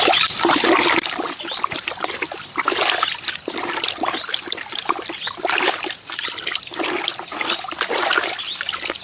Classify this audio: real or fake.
real